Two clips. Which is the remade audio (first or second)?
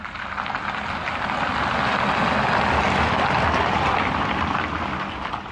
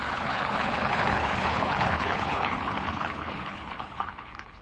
second